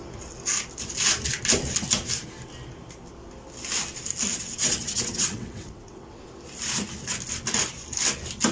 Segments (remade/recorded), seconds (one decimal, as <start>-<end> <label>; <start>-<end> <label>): 0.0-4.3 recorded; 4.3-6.2 remade; 6.2-8.5 recorded